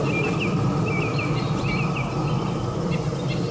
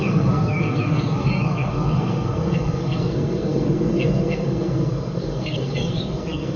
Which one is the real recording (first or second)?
first